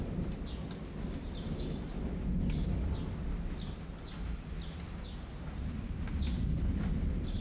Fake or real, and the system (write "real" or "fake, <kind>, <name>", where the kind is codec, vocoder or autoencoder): real